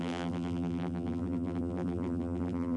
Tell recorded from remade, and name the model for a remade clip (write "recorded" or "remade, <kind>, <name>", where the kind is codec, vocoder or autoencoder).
remade, vocoder, BigVGAN v2